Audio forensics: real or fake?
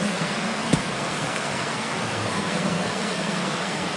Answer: fake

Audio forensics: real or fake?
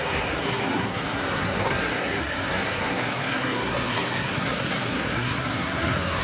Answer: fake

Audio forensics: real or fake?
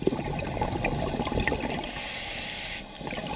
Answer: real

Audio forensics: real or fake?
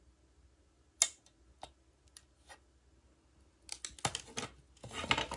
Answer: real